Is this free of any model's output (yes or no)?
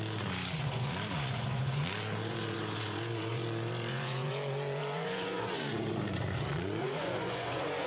no